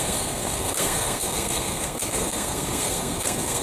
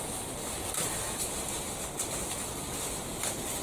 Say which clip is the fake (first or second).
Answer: first